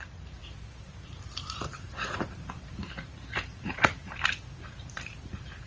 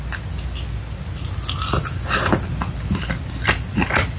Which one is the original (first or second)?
second